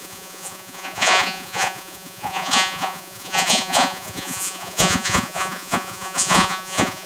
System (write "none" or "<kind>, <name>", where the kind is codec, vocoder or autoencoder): vocoder, Vocos